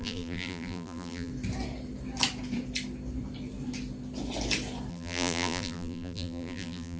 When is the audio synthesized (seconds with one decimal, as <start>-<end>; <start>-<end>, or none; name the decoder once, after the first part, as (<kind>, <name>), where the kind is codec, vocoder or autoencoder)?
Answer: 0.0-1.3 (vocoder, BigVGAN v2); 4.9-7.0